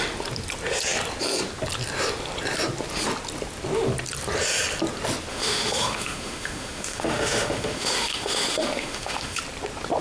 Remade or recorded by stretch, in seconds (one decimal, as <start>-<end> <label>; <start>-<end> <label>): 0.0-5.3 recorded; 5.3-9.4 remade; 9.4-10.0 recorded